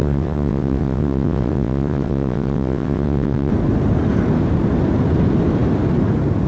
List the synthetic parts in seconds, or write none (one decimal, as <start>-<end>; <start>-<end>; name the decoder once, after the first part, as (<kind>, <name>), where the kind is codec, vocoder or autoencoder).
0.0-3.5 (vocoder, WaveNeXt)

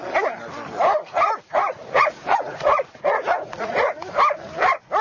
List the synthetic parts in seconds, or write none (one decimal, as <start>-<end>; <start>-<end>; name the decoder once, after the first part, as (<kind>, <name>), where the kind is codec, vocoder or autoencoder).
0.9-3.9 (vocoder, Vocos)

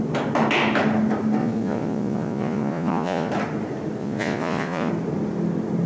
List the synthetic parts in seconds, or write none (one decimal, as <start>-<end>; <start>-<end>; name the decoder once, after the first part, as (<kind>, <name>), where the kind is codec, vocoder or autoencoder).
1.4-3.3 (vocoder, Vocos); 4.0-4.9

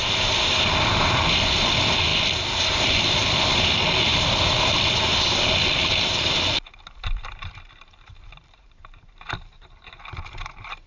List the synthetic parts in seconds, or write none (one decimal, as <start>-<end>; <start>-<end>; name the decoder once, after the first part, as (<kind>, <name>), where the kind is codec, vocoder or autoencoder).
0.0-2.1 (vocoder, BigVGAN v2); 2.8-10.9

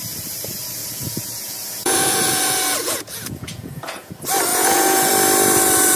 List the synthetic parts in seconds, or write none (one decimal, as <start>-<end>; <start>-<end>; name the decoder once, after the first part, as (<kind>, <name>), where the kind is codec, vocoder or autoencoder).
0.8-4.1 (vocoder, Vocos); 4.5-5.1

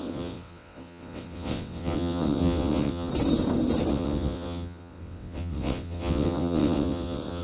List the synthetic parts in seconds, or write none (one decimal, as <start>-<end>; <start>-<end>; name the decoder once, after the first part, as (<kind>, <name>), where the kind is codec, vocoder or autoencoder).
0.0-3.1 (vocoder, WaveNeXt); 3.9-7.4